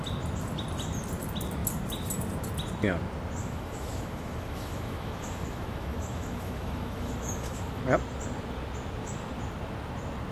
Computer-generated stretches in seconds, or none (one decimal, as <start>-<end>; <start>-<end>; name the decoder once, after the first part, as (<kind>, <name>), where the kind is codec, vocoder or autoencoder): 3.4-7.8 (autoencoder, DAC-VAE)